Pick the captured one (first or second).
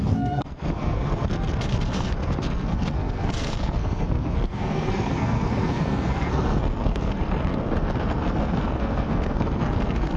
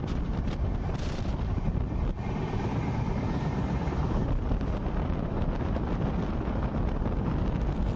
second